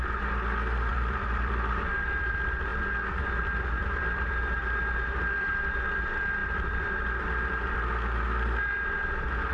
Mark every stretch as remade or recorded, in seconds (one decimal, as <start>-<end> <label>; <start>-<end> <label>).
0.0-0.9 recorded; 0.9-1.9 remade; 1.9-3.8 recorded; 3.8-4.6 remade; 4.6-6.4 recorded; 6.4-7.2 remade; 7.2-9.5 recorded

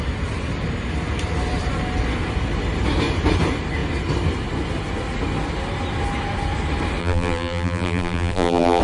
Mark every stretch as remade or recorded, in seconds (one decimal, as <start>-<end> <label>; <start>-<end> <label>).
0.0-7.0 recorded; 7.0-8.8 remade

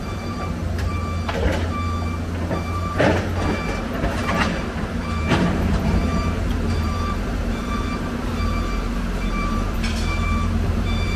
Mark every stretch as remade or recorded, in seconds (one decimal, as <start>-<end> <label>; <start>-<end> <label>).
0.0-1.0 remade; 1.0-3.8 recorded; 3.8-4.2 remade; 4.2-4.8 recorded; 4.8-8.3 remade; 8.3-9.3 recorded; 9.3-11.2 remade

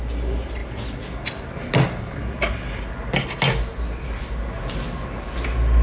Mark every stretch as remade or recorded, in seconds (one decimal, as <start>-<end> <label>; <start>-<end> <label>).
0.0-3.7 recorded; 3.7-4.4 remade; 4.4-5.8 recorded

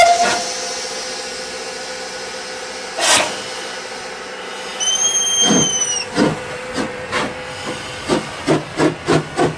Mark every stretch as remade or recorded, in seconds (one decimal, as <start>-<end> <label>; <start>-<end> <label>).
0.0-6.3 recorded; 6.3-8.5 remade; 8.5-9.6 recorded